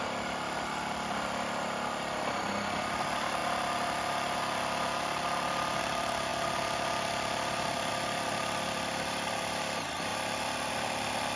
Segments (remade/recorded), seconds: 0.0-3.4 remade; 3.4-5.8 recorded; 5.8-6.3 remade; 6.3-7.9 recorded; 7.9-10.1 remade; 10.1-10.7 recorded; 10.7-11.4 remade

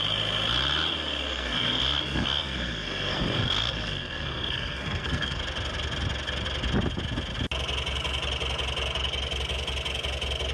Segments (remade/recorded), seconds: 0.0-1.2 recorded; 1.2-5.4 remade; 5.4-10.5 recorded

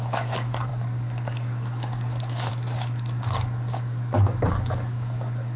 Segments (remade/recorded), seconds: 0.0-5.6 remade

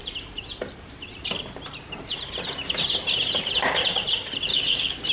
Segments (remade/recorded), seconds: 0.0-4.5 recorded; 4.5-5.1 remade